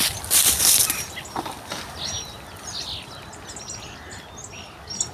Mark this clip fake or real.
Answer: real